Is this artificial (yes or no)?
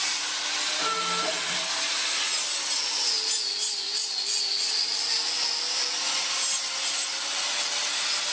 no